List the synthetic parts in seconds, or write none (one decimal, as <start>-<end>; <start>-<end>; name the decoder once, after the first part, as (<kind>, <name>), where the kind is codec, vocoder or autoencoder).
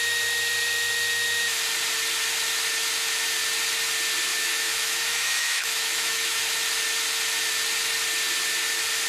4.3-6.4 (autoencoder, DAC-VAE)